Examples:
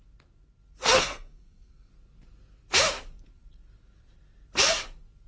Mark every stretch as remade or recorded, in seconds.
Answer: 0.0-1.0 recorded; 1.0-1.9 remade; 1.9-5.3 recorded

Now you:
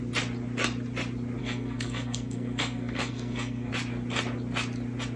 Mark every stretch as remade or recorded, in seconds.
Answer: 0.0-1.4 recorded; 1.4-3.7 remade; 3.7-5.2 recorded

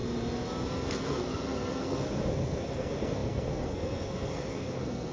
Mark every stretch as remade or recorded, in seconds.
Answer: 0.0-0.9 recorded; 0.9-5.1 remade

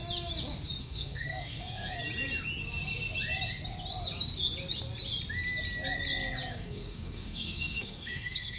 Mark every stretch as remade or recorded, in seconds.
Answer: 0.0-0.8 recorded; 0.8-2.0 remade; 2.0-6.5 recorded; 6.5-8.6 remade

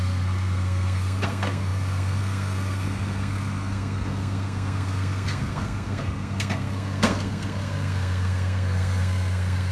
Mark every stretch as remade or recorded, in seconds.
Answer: 0.0-9.7 remade

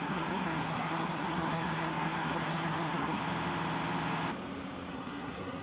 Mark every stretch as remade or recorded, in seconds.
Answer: 0.0-3.2 remade; 3.2-4.9 recorded; 4.9-5.6 remade